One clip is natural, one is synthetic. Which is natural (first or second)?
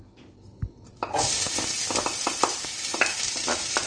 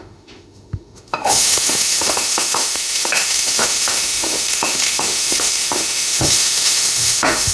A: first